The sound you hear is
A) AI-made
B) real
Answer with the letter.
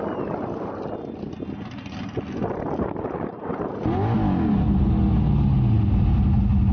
B